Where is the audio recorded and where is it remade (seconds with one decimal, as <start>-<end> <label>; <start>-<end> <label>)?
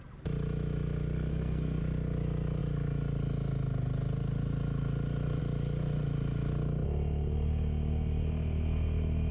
0.0-1.3 recorded; 1.3-1.8 remade; 1.8-9.3 recorded